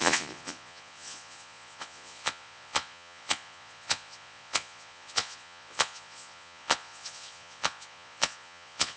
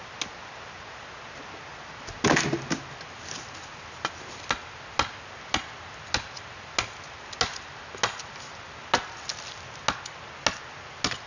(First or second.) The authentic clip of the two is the second